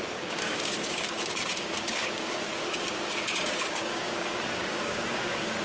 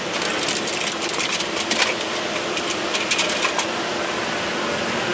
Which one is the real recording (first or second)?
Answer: second